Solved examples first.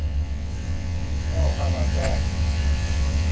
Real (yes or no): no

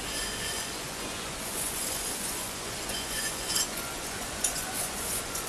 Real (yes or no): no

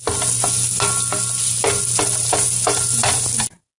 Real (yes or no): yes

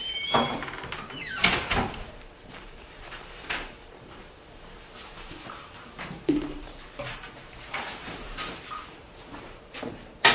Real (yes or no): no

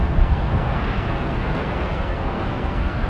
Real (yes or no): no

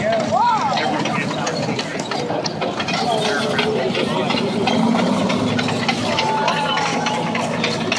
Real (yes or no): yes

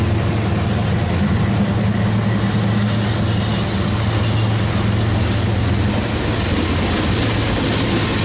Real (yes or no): yes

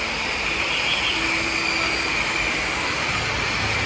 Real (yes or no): yes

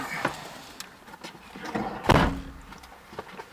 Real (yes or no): yes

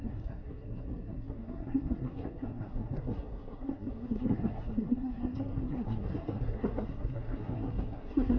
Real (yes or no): no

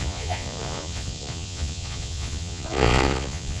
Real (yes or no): no